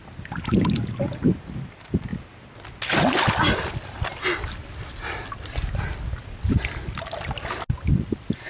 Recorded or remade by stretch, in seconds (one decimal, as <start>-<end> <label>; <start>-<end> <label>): 0.0-8.5 recorded